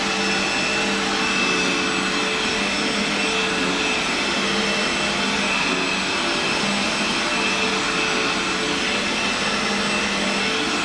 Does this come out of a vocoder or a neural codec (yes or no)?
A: no